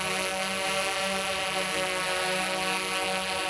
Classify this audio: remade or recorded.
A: recorded